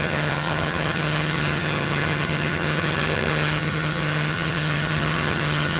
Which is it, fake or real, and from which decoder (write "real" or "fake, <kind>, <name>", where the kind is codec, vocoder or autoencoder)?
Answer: fake, vocoder, HiFi-GAN